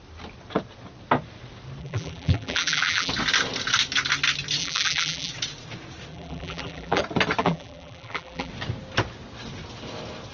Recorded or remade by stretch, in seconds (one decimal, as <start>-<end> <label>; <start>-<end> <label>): 0.0-1.8 recorded; 1.8-3.1 remade; 3.1-4.6 recorded; 4.6-5.3 remade; 5.3-6.1 recorded; 6.1-7.0 remade; 7.0-7.4 recorded; 7.4-8.5 remade; 8.5-10.3 recorded